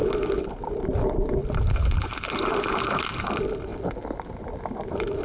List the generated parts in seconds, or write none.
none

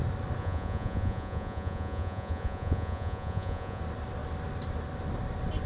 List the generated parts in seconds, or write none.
0.4-3.8 (vocoder, Vocos)

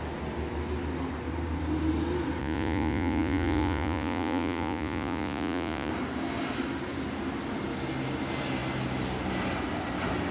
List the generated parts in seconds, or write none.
2.4-5.9 (vocoder, Vocos)

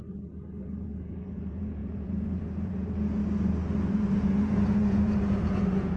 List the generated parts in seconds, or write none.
0.5-3.2 (vocoder, Vocos); 3.9-6.0

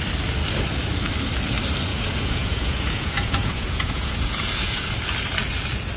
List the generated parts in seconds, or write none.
1.9-4.9 (vocoder, Vocos)

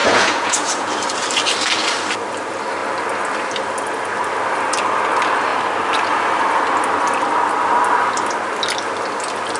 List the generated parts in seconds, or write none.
0.0-0.9 (vocoder, Vocos)